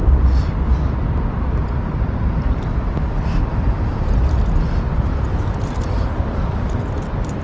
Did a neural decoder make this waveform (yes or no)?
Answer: no